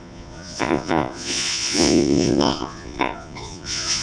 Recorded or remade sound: remade